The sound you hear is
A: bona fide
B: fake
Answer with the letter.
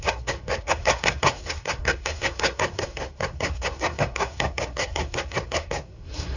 B